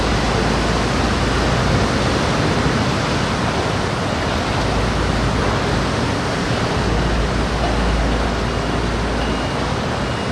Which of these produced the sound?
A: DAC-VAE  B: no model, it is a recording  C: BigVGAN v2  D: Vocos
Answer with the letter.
B